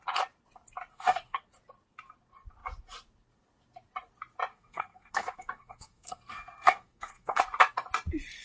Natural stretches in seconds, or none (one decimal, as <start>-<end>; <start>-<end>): 0.0-0.9; 1.5-4.5; 7.4-8.4

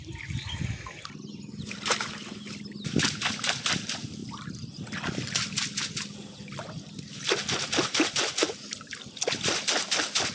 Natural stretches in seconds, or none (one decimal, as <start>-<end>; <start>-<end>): 0.0-10.3

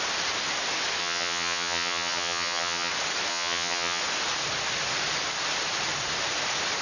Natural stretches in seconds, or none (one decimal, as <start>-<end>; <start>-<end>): 0.0-1.0; 2.9-3.3; 4.0-6.8

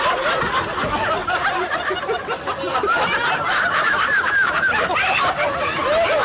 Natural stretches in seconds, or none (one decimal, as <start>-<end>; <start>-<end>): 0.0-1.2; 1.7-2.7; 5.2-6.2

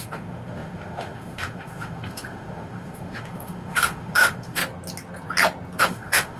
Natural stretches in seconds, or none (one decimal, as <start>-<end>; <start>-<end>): 4.6-5.8

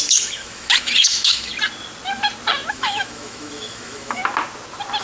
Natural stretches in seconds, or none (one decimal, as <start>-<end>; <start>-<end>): 1.5-2.7; 4.2-5.0

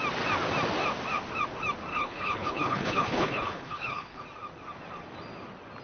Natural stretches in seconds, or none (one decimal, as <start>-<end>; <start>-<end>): 0.0-1.9; 4.2-5.8